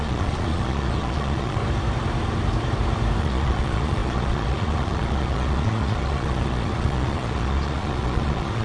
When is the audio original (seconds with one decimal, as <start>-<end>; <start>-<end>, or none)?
1.6-3.2